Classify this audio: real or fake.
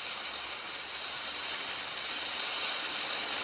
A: real